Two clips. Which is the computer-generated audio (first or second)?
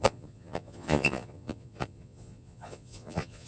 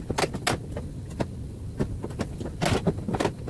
first